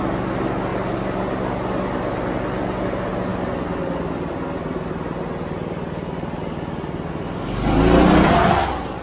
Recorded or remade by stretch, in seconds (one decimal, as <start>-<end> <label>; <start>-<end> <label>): 0.0-9.0 recorded

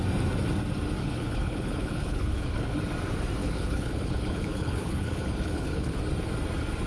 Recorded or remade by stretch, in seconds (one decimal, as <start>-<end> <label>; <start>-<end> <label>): 0.0-1.0 recorded; 1.0-2.8 remade; 2.8-3.4 recorded; 3.4-6.0 remade; 6.0-6.9 recorded

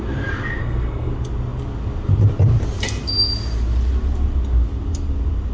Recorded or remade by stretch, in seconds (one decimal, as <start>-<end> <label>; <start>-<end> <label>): 0.0-0.6 recorded; 0.6-1.1 remade; 1.1-5.5 recorded

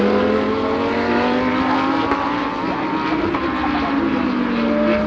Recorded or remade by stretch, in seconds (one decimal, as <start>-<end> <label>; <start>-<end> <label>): 0.0-5.1 recorded

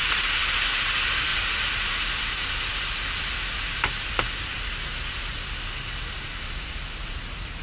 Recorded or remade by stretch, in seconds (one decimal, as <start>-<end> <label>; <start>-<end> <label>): 0.0-7.6 recorded

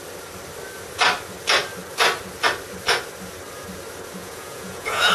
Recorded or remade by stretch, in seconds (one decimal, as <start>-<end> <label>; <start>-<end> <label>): 0.0-4.2 recorded; 4.2-5.1 remade

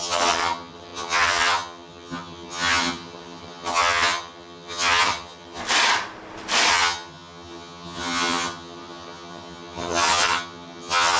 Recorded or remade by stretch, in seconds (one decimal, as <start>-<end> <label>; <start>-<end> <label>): 0.0-5.6 remade; 5.6-6.7 recorded; 6.7-11.2 remade

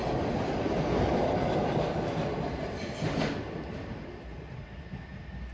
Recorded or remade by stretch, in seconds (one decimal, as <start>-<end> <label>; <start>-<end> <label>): 0.0-5.5 recorded